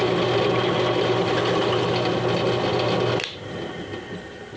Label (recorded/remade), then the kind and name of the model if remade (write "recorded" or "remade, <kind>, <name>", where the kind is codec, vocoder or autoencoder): recorded